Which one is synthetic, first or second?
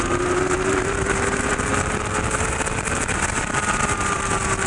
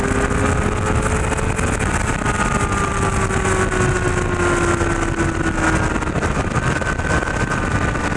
first